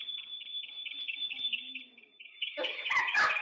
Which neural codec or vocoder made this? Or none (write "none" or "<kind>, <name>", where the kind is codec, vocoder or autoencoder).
none